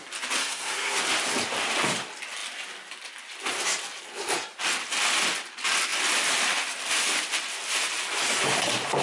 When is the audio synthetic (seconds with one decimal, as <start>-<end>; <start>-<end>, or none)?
0.4-1.0